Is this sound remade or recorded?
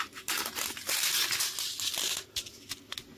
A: recorded